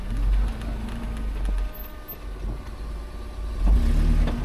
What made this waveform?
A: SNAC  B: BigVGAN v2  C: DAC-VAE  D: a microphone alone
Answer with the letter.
D